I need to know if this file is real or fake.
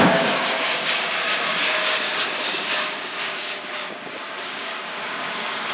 fake